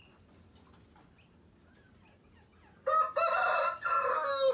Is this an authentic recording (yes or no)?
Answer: yes